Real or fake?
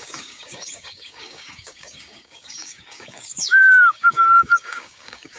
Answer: fake